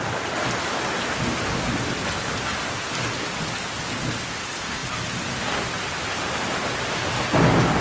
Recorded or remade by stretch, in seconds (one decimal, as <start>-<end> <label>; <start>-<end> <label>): 0.0-7.8 recorded